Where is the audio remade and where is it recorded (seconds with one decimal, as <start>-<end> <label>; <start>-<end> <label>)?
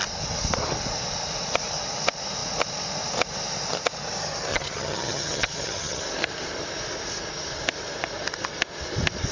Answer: 0.0-4.5 recorded; 4.5-6.0 remade; 6.0-9.3 recorded